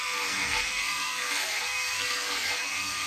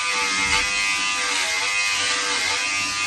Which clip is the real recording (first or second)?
second